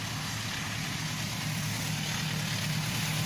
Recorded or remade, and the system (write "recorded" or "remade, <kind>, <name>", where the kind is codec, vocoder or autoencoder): recorded